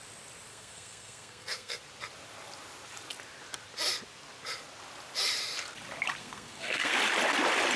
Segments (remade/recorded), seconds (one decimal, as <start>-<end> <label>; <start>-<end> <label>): 0.0-0.5 recorded; 0.5-1.8 remade; 1.8-6.2 recorded; 6.2-7.0 remade; 7.0-7.8 recorded